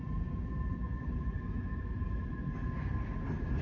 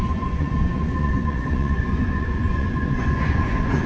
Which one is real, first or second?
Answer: first